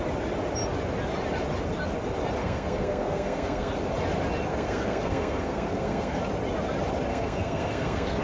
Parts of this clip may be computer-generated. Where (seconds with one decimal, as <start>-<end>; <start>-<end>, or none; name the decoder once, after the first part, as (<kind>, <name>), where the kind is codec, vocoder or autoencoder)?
2.4-3.7 (codec, SNAC); 4.5-6.2; 7.1-8.2